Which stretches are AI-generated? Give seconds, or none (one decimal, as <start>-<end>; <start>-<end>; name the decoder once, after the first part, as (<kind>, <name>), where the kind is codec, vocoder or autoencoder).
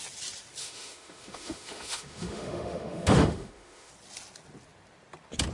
0.6-3.9 (autoencoder, DAC-VAE)